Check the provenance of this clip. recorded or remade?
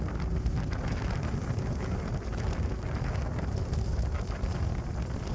recorded